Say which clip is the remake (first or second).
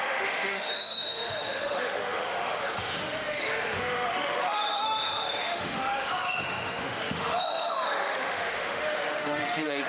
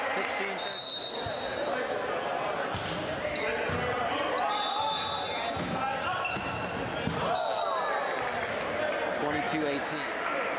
first